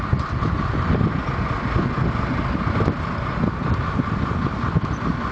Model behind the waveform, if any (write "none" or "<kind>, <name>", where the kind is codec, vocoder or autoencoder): none